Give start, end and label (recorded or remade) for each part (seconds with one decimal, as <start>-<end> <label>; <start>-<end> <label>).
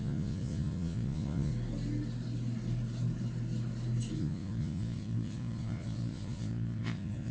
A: 0.0-1.5 remade; 1.5-4.2 recorded; 4.2-7.3 remade